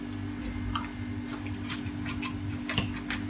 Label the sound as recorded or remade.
recorded